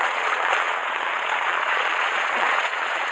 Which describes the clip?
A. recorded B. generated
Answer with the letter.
B